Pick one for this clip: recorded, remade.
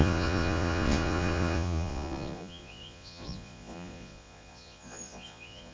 remade